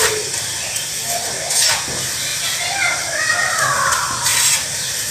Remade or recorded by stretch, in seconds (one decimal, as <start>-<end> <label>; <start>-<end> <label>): 0.0-5.1 recorded